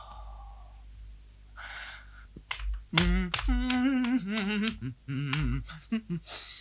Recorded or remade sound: recorded